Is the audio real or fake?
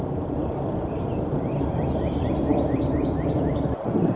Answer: fake